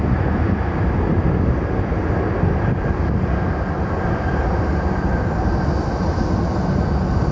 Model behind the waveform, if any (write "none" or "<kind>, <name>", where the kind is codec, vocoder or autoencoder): none